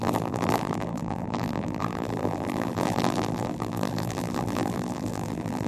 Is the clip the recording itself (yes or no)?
no